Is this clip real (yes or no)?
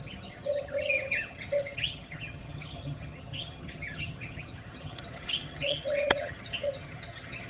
no